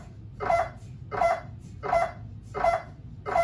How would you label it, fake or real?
real